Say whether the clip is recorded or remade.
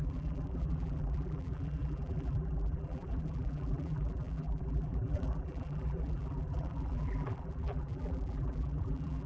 remade